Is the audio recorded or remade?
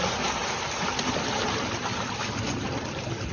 recorded